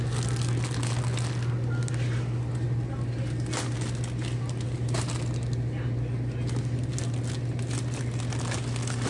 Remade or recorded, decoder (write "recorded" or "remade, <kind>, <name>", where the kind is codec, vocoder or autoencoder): recorded